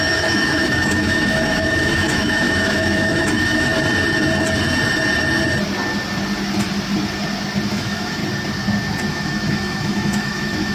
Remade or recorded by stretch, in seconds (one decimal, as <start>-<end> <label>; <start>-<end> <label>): 0.0-3.7 remade; 3.7-7.7 recorded; 7.7-8.2 remade; 8.2-9.1 recorded; 9.1-10.7 remade